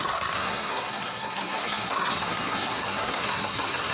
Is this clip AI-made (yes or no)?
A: yes